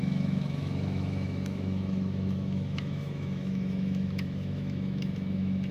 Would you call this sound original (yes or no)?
no